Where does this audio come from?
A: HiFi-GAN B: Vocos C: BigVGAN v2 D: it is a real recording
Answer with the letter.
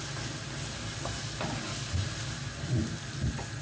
D